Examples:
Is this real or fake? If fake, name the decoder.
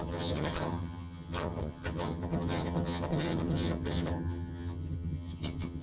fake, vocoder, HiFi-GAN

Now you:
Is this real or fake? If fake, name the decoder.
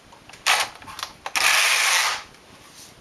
real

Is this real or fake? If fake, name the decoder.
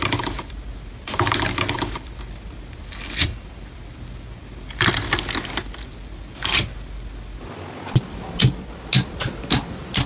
real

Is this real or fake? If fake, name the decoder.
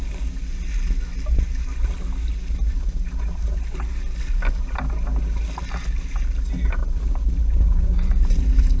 real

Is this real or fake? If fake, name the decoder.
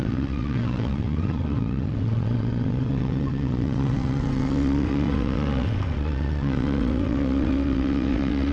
fake, vocoder, WaveNeXt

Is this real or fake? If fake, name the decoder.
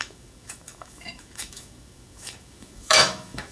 fake, autoencoder, DAC-VAE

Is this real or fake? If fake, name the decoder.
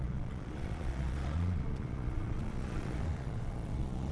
fake, vocoder, Vocos